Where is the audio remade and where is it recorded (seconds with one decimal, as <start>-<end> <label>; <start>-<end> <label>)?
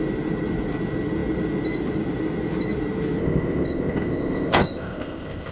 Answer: 0.0-3.2 recorded; 3.2-5.5 remade